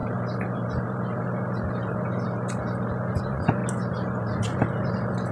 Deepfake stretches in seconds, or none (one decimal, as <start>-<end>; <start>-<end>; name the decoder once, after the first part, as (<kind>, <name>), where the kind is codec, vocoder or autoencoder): 3.2-3.6 (vocoder, Vocos)